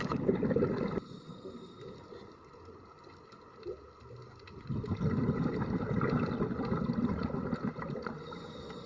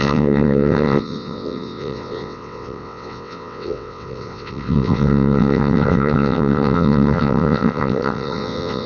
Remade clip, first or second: second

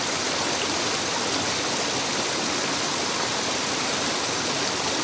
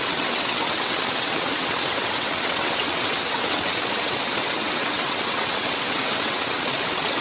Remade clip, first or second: second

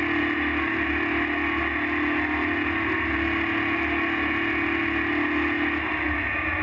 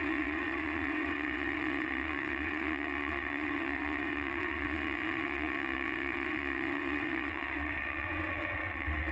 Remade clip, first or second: second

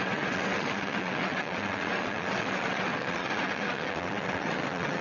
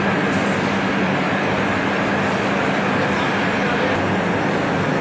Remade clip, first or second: first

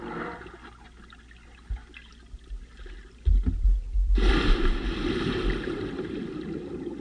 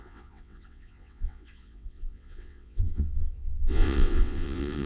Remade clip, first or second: second